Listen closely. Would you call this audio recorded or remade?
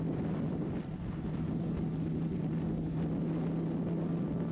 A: recorded